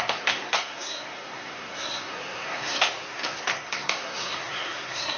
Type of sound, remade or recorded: remade